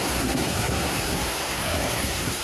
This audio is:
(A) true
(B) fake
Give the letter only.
B